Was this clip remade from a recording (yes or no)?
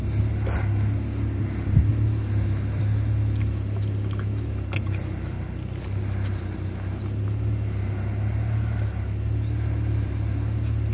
no